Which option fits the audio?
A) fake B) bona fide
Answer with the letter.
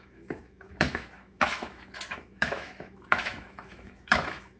A